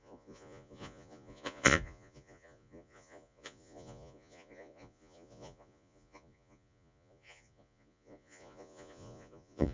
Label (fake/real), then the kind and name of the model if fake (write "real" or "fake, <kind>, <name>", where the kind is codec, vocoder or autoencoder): fake, vocoder, Vocos